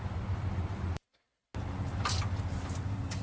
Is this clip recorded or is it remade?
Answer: recorded